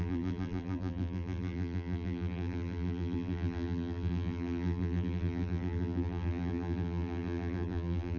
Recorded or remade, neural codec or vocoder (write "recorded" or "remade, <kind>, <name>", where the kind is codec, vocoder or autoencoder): remade, vocoder, BigVGAN v2